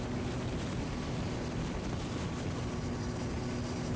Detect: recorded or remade recorded